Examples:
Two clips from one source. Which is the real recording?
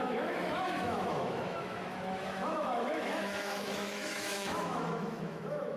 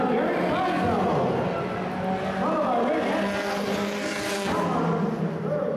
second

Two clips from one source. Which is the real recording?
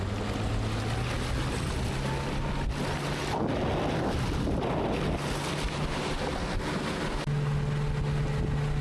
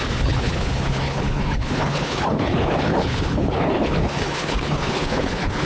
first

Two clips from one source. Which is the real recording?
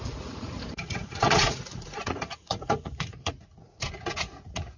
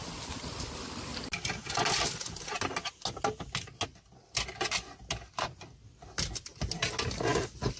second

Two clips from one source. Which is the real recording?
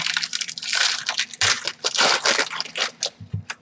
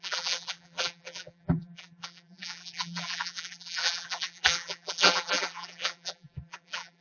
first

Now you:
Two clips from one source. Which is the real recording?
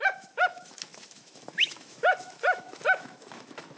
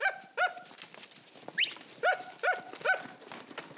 second